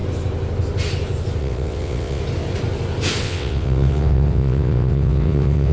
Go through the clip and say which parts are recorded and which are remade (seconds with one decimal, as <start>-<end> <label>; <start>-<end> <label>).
0.0-1.4 recorded; 1.4-2.2 remade; 2.2-3.2 recorded; 3.2-5.7 remade